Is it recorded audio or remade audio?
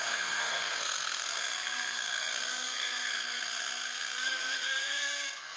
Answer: remade